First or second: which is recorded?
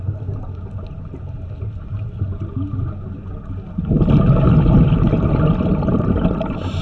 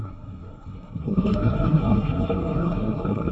first